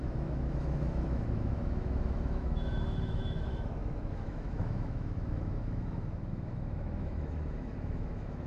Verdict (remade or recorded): remade